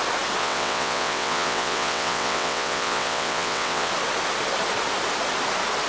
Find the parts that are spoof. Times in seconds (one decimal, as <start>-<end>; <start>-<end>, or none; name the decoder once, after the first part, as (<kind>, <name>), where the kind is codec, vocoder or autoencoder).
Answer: 0.4-3.9 (vocoder, WaveNeXt)